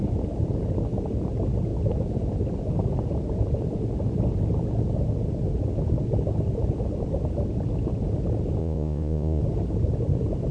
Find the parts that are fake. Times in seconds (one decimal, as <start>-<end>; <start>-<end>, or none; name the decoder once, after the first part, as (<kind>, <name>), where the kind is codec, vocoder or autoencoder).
8.6-9.4 (vocoder, Vocos)